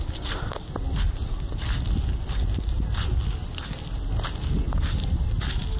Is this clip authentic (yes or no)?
yes